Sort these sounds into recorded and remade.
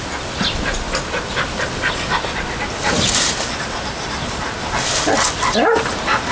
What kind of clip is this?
recorded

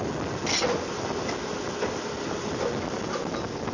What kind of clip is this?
recorded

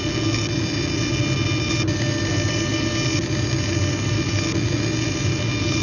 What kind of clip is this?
recorded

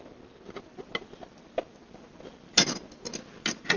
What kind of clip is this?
recorded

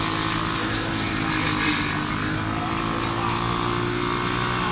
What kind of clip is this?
recorded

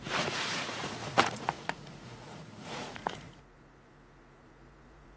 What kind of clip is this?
remade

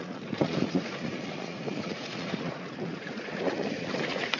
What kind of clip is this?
remade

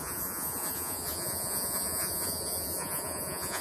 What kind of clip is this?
remade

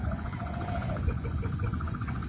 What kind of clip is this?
remade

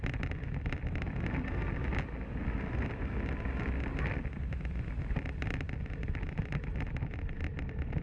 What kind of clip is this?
recorded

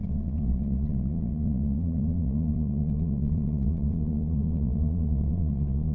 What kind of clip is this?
remade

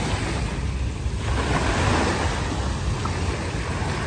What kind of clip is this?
recorded